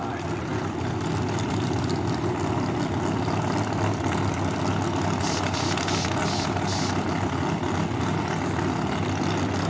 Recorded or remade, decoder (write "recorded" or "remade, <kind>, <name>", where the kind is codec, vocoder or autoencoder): recorded